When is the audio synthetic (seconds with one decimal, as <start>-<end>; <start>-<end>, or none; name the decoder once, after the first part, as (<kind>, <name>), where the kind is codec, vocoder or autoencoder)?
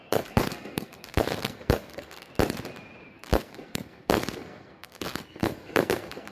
0.0-2.3 (codec, SNAC); 3.1-6.3